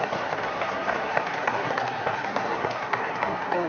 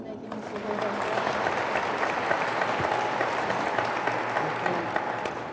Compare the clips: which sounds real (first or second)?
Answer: second